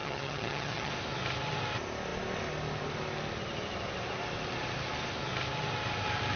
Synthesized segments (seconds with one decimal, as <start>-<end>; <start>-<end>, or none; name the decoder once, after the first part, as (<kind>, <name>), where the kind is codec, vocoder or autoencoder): 0.0-0.9 (vocoder, HiFi-GAN)